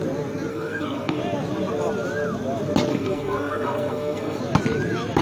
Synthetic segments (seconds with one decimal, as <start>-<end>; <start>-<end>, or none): 0.5-1.2; 2.9-4.4